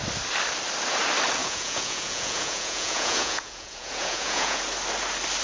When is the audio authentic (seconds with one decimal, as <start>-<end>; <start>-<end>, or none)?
0.0-1.4; 4.6-5.4